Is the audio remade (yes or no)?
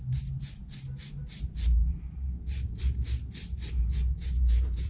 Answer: yes